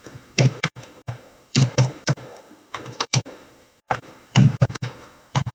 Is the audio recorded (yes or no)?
no